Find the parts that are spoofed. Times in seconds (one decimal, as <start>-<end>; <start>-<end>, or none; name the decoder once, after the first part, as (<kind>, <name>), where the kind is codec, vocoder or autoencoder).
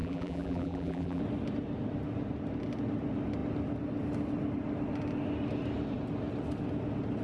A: 0.0-1.2 (vocoder, BigVGAN v2)